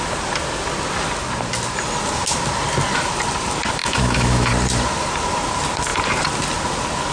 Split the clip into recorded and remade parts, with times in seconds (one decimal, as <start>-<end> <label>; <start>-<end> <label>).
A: 0.0-3.8 recorded; 3.8-4.5 remade; 4.5-7.1 recorded